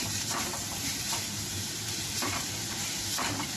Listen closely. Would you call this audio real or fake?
fake